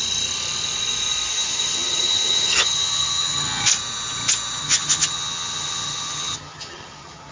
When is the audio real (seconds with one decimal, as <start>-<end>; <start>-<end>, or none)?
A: 0.0-1.3; 3.6-4.6